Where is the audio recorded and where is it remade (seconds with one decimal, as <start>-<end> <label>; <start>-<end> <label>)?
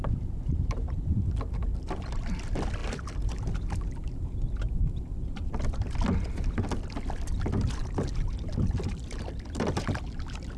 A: 0.0-10.6 recorded